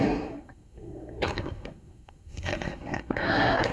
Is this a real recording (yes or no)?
no